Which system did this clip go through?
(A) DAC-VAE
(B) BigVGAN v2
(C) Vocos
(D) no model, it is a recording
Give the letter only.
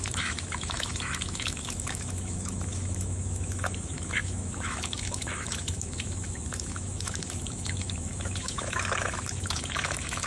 A